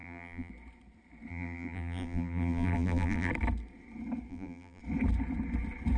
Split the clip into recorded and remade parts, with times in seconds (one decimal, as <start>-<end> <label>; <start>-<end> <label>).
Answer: 0.0-0.5 remade; 0.5-1.3 recorded; 1.3-3.3 remade; 3.3-4.3 recorded; 4.3-4.8 remade; 4.8-6.0 recorded